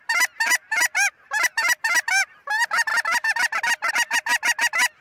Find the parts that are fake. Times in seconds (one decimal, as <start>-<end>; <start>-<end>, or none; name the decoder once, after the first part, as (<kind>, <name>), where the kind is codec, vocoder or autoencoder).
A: 0.0-2.9 (vocoder, BigVGAN v2); 3.9-4.3